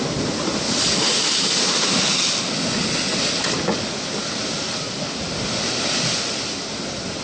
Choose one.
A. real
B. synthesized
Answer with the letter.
A